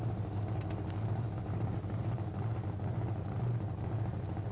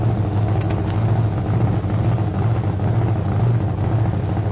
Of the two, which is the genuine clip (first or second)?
second